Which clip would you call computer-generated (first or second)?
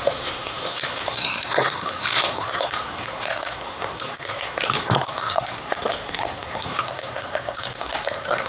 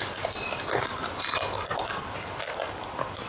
first